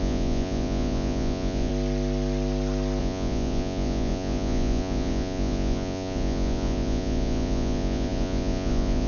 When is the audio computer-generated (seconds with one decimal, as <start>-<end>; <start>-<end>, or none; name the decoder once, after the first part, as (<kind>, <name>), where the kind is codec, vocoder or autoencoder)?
0.0-1.7 (vocoder, Vocos); 3.0-9.1